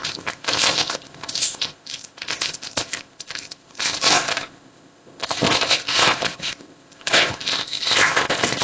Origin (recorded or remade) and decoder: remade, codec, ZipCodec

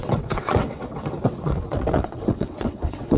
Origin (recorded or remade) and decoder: remade, vocoder, WaveNeXt